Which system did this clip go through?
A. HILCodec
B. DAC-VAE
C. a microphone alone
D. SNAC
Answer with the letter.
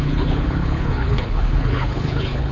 A